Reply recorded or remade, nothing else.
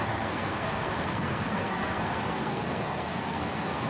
remade